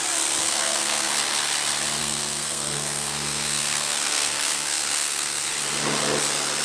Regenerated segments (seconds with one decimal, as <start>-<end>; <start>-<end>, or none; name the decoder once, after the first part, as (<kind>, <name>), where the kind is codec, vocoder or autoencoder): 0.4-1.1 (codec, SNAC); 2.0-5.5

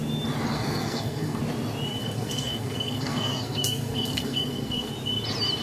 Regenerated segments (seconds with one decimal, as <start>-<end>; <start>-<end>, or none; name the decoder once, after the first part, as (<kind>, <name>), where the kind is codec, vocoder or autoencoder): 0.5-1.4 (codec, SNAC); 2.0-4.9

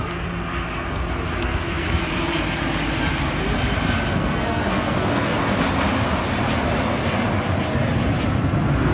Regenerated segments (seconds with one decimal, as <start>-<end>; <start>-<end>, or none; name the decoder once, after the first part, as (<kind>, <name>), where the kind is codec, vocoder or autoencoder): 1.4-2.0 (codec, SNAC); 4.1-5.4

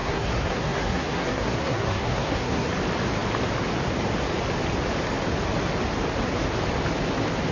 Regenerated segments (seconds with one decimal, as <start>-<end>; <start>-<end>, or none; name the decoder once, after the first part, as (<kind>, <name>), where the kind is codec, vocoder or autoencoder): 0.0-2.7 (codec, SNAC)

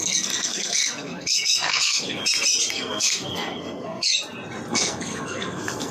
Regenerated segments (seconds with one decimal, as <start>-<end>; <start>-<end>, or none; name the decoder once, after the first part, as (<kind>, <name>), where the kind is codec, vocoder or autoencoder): 0.0-2.2 (codec, SNAC); 2.7-4.1; 4.7-5.9

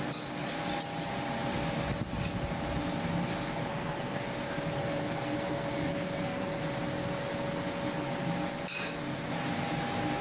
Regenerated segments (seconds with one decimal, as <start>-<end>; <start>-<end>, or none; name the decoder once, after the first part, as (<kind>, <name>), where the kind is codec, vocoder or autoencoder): 3.7-4.2 (codec, SNAC); 4.8-6.6

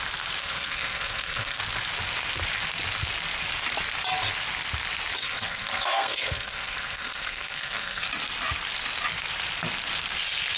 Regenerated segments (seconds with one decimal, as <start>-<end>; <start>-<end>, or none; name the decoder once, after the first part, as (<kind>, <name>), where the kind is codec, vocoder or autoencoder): 0.4-1.6 (codec, SNAC); 5.2-8.1

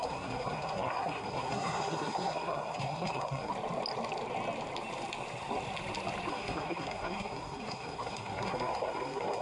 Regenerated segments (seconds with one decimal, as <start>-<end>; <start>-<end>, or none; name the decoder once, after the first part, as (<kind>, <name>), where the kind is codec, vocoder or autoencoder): 0.0-3.5 (codec, SNAC); 6.3-9.4